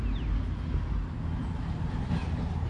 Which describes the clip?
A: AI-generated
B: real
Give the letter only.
B